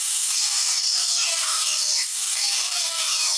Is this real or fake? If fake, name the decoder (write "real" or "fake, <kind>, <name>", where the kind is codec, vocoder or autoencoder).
fake, codec, DAC